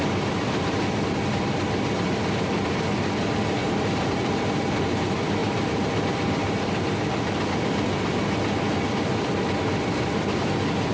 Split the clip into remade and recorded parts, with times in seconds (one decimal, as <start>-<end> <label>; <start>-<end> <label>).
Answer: 0.0-3.6 recorded; 3.6-4.3 remade; 4.3-5.4 recorded; 5.4-6.0 remade; 6.0-6.4 recorded; 6.4-7.5 remade; 7.5-10.9 recorded